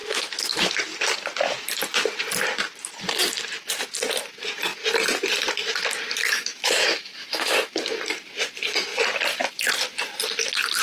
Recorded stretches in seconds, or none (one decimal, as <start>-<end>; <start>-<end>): 0.7-6.2; 7.9-10.8